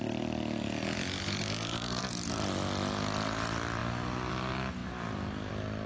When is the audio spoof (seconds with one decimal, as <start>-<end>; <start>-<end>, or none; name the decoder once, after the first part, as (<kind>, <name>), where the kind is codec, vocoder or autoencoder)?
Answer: 1.4-2.0 (codec, DAC)